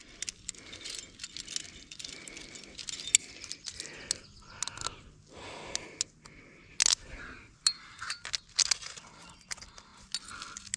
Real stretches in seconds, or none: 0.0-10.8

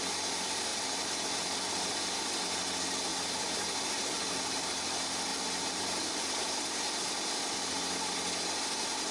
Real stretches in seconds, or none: 0.0-0.7; 1.9-3.1; 4.6-5.3; 7.8-9.1

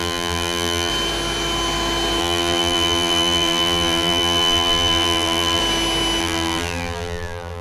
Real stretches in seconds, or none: 0.9-2.2; 5.6-6.2

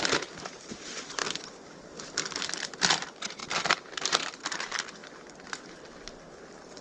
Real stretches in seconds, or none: 1.2-2.9; 3.4-4.0; 5.0-6.8

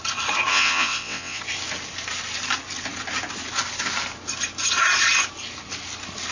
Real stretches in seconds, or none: 0.0-0.5; 1.4-6.3

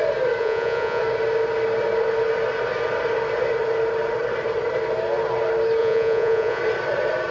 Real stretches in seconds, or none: 0.0-0.4; 1.0-5.8; 6.6-7.3